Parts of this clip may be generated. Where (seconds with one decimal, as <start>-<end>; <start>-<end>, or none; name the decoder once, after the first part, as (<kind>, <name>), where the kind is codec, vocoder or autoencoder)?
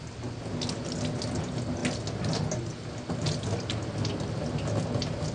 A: none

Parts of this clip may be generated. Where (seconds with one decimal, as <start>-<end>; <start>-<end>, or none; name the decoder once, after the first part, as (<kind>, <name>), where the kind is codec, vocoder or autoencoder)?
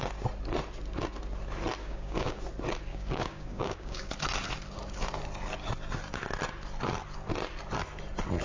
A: 1.8-2.4 (codec, DAC); 2.9-4.1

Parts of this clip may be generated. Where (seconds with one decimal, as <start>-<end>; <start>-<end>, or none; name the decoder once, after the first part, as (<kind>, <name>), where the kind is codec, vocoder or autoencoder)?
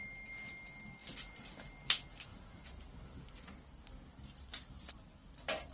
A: none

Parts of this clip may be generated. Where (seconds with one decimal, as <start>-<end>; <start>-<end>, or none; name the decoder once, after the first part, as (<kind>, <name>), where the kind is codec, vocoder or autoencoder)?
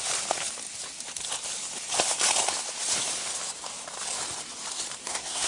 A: 5.0-5.5 (codec, SNAC)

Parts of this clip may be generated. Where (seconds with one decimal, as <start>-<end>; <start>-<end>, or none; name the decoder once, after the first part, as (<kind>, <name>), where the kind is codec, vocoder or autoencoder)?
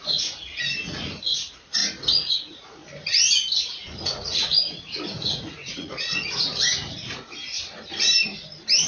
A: 0.0-1.8 (vocoder, Vocos); 2.3-2.8; 3.6-7.4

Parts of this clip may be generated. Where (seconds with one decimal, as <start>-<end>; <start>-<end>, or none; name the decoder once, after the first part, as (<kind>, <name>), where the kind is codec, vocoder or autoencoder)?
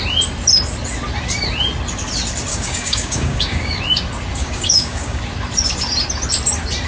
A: 2.5-3.8 (codec, DAC); 4.4-5.2